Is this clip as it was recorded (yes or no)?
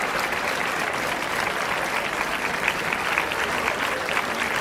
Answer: no